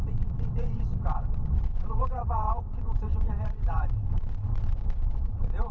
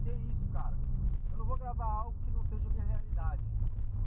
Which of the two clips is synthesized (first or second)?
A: first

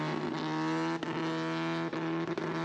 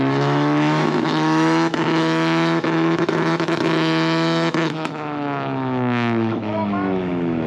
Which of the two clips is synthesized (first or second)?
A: second